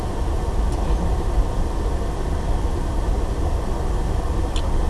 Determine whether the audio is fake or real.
real